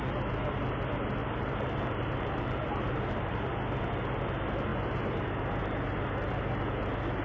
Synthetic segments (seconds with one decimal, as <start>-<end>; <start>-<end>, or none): 1.2-3.5